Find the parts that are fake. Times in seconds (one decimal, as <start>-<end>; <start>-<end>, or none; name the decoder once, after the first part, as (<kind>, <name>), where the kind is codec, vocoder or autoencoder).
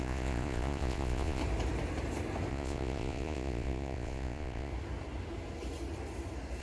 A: 0.0-1.4 (vocoder, Vocos); 2.5-4.7